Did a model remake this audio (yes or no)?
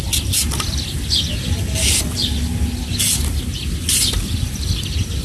no